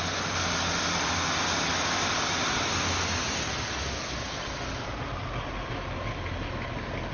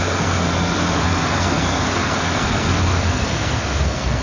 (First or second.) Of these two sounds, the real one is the first